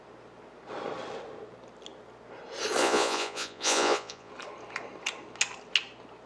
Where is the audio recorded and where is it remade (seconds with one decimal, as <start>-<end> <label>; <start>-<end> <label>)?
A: 0.0-2.8 recorded; 2.8-4.3 remade; 4.3-6.3 recorded